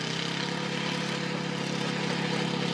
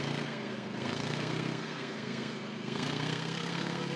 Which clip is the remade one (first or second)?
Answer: second